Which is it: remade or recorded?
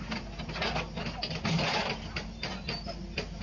recorded